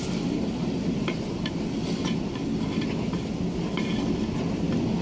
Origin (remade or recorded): recorded